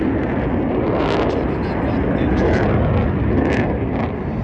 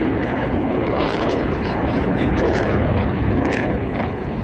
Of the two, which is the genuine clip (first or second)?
first